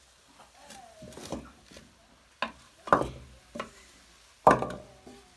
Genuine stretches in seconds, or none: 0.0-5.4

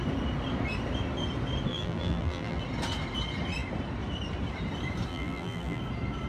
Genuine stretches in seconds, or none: 0.0-1.7; 2.6-5.1; 5.8-6.3